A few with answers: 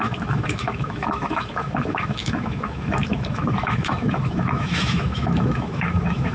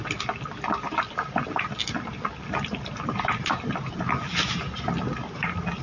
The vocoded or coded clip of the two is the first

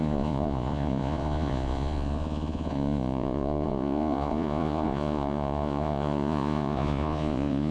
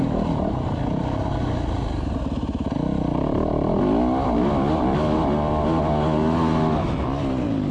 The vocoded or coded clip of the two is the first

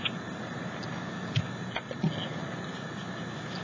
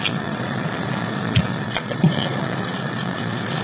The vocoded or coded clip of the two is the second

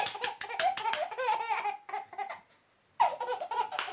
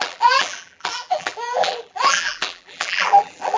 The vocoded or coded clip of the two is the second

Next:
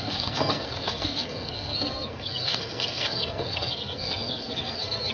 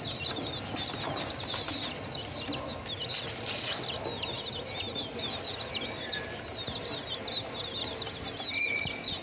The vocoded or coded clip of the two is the first